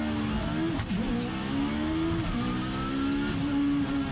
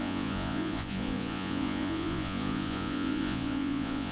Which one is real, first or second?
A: first